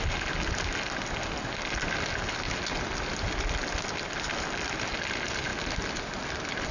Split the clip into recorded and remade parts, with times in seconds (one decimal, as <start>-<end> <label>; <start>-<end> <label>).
0.0-6.7 recorded